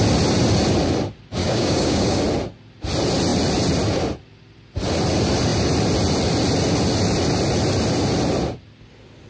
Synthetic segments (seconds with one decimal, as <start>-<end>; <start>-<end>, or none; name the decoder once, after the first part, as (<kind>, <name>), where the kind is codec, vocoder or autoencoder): 1.4-2.2 (codec, DAC)